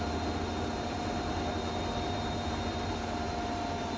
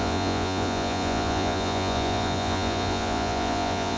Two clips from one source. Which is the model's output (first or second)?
second